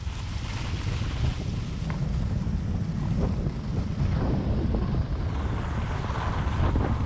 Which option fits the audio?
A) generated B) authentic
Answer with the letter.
B